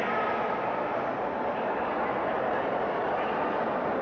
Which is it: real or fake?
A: real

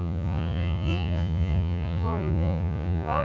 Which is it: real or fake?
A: fake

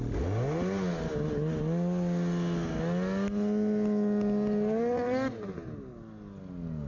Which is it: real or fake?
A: real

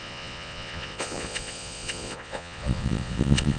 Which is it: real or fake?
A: fake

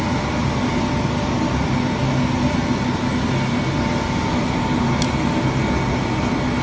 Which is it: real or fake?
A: real